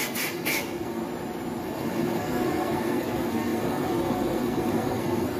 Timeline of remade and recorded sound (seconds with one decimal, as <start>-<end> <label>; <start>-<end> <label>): 0.0-1.0 remade; 1.0-1.6 recorded; 1.6-5.4 remade